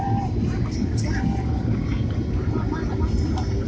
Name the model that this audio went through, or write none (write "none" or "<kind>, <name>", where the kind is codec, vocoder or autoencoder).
none